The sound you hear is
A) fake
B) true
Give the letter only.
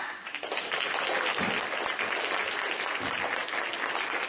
B